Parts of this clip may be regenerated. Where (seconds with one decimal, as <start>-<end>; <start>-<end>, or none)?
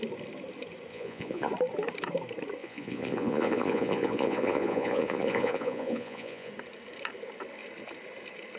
0.9-1.5; 2.6-6.5